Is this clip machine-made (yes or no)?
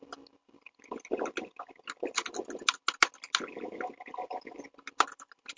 no